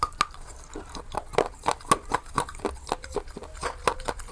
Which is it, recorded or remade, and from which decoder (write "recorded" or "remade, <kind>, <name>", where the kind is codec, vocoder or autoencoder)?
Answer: recorded